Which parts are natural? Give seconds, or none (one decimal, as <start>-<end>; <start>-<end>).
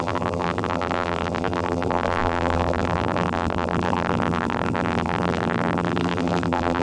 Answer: none